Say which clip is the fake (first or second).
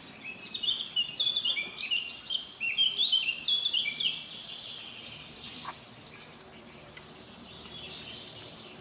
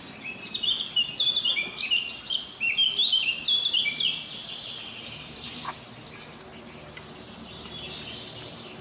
first